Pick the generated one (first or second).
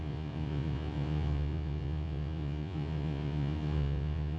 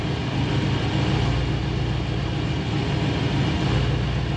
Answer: first